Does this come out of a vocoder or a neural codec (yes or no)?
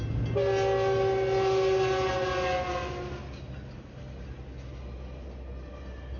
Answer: no